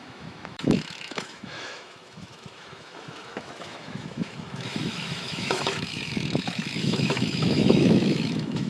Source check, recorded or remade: remade